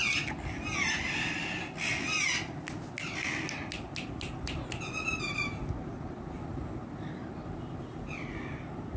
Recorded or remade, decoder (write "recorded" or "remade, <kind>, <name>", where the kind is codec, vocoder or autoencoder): recorded